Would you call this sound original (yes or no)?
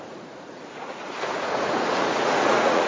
no